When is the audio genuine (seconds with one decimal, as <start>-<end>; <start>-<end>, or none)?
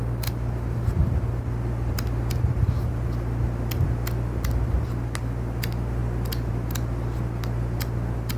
0.0-8.4